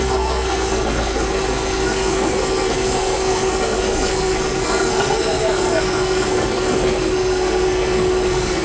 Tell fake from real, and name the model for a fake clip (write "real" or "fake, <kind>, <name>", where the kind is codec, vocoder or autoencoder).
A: fake, codec, SNAC